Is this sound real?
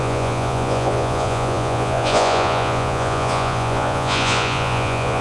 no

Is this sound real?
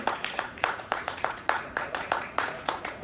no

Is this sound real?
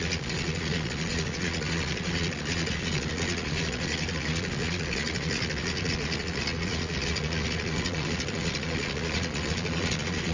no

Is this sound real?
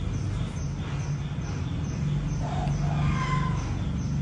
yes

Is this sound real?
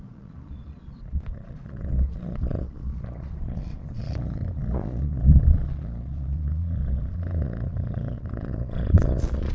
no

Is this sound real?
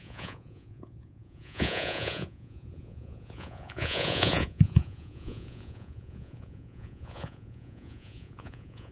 no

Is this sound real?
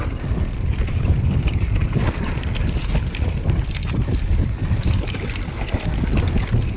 yes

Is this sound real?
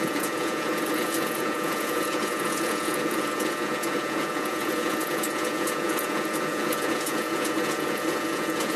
no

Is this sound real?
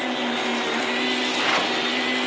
yes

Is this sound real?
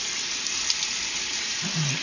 yes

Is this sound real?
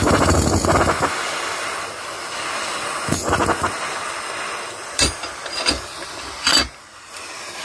yes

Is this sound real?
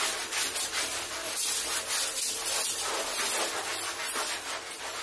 yes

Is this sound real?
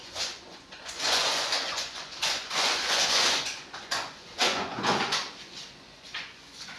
no